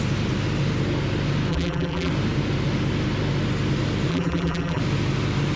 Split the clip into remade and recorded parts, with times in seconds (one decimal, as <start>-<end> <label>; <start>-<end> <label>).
0.0-1.5 recorded; 1.5-2.1 remade; 2.1-4.1 recorded; 4.1-4.8 remade; 4.8-5.6 recorded